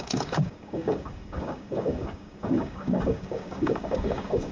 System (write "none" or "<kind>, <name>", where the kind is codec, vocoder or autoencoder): codec, DAC